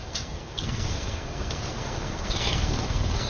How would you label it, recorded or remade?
remade